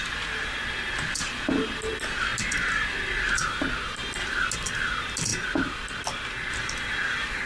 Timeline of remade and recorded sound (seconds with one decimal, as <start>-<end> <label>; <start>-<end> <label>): 0.0-7.5 recorded